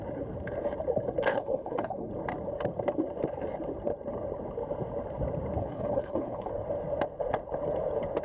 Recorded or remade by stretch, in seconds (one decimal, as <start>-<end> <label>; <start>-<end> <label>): 0.0-1.3 recorded; 1.3-2.1 remade; 2.1-5.6 recorded; 5.6-6.5 remade; 6.5-8.2 recorded